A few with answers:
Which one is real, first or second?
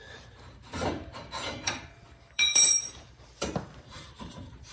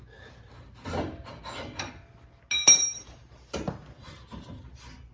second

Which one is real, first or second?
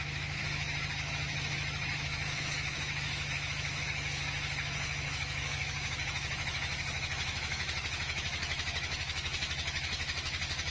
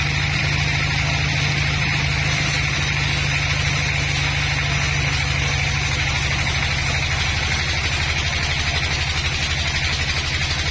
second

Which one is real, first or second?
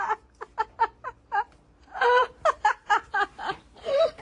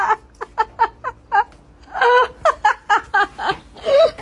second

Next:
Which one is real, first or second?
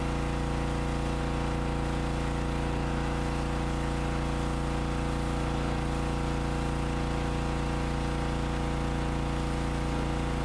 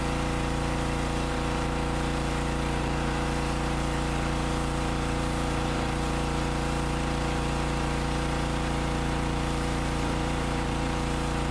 first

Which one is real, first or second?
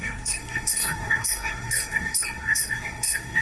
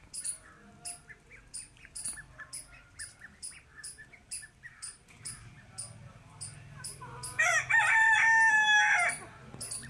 second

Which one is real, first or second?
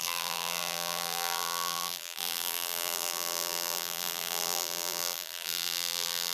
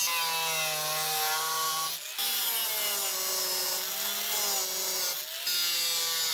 second